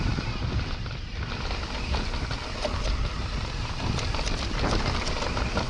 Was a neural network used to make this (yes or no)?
no